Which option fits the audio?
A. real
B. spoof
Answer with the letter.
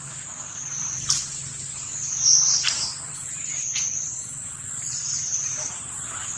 B